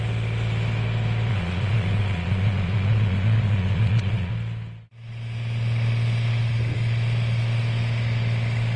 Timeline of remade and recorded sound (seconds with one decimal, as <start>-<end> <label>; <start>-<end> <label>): 0.0-1.3 recorded; 1.3-4.3 remade; 4.3-8.8 recorded